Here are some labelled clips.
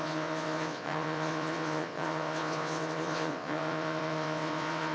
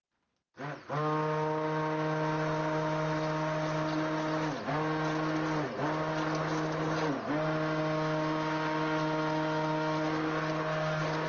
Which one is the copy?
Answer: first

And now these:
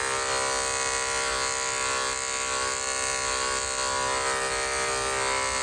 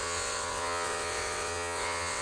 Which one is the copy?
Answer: second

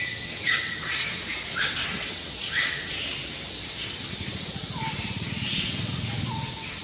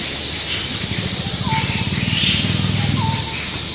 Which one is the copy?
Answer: first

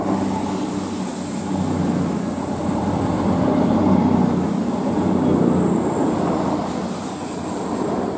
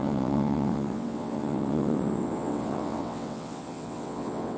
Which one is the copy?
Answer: second